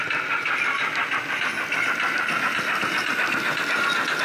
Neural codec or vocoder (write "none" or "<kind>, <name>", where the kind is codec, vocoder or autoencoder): none